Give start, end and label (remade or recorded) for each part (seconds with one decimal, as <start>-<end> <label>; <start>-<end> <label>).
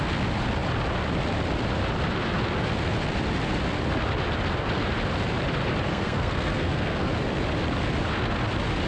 0.0-5.9 recorded; 5.9-7.1 remade; 7.1-8.9 recorded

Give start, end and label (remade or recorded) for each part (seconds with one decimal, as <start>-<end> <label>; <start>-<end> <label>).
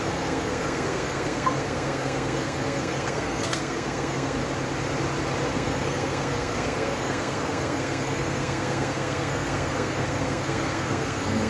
0.0-4.4 remade; 4.4-5.5 recorded; 5.5-11.5 remade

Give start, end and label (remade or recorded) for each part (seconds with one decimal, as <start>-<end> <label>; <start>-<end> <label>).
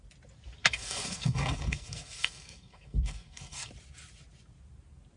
0.0-0.6 recorded; 0.6-3.7 remade; 3.7-5.2 recorded